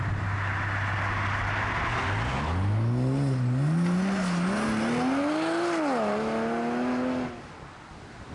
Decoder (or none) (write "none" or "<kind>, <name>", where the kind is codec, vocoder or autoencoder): none